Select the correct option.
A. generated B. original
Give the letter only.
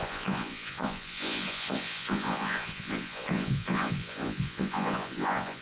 A